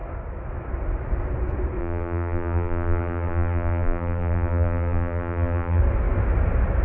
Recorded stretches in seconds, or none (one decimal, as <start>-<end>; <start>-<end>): 0.0-1.8; 5.8-6.8